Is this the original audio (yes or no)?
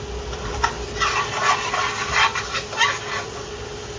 yes